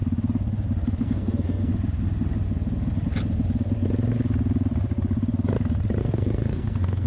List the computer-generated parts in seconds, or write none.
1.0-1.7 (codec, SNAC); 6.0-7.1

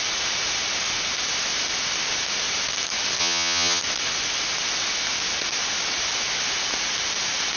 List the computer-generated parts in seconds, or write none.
3.2-3.8 (vocoder, HiFi-GAN)

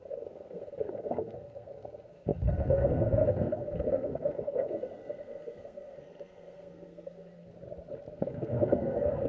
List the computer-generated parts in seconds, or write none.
0.0-7.5 (codec, SNAC); 8.1-9.3

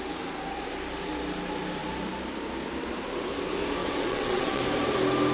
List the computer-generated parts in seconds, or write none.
3.8-4.6 (vocoder, WaveNeXt)

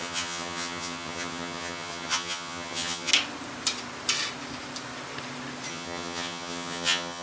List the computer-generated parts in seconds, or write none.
0.0-3.1 (vocoder, HiFi-GAN); 5.7-7.2

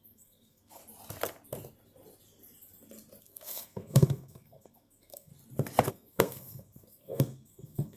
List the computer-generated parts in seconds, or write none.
0.0-0.8 (codec, SNAC); 3.2-5.3; 5.9-8.0

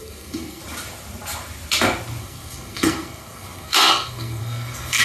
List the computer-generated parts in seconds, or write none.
0.0-0.6 (codec, SNAC); 2.2-5.0